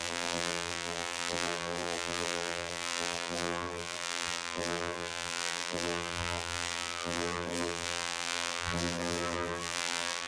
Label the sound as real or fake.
fake